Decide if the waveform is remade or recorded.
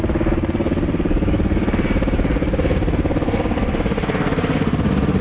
recorded